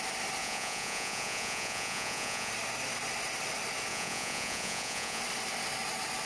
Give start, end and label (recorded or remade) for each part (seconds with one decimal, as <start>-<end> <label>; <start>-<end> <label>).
0.0-0.4 recorded; 0.4-2.5 remade; 2.5-3.9 recorded; 3.9-5.2 remade; 5.2-6.3 recorded